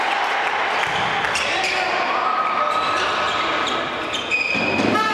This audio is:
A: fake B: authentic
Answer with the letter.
B